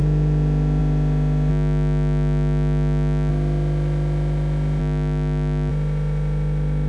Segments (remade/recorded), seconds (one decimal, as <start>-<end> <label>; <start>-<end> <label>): 0.0-1.5 remade; 1.5-3.3 recorded; 3.3-4.8 remade; 4.8-5.7 recorded; 5.7-6.9 remade